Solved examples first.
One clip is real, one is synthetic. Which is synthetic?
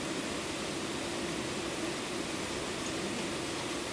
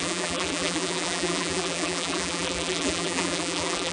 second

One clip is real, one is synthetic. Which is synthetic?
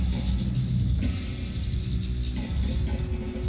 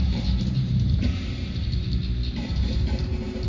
second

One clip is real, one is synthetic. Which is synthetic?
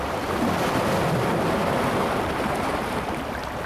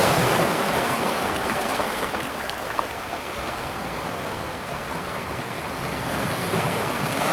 second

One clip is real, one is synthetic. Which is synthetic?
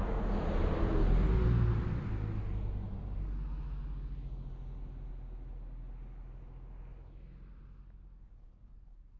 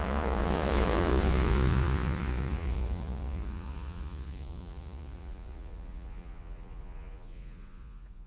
second